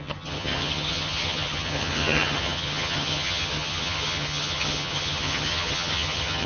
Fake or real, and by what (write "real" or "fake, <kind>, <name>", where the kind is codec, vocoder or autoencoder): fake, vocoder, HiFi-GAN